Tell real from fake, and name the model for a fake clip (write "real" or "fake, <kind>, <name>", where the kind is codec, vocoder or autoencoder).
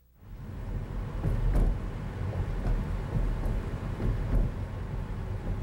real